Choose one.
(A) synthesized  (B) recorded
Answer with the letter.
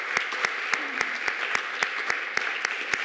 B